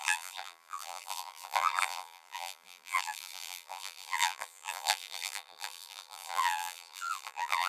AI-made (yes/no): yes